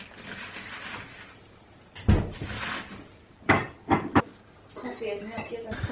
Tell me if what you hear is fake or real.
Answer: real